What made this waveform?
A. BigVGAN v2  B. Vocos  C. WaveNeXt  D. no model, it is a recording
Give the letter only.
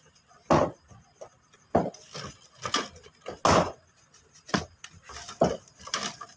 D